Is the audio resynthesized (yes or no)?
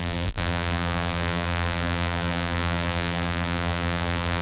yes